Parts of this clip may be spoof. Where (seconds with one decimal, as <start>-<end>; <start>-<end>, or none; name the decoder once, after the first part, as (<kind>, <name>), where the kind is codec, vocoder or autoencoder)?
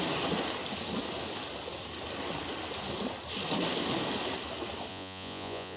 4.9-5.8 (vocoder, Vocos)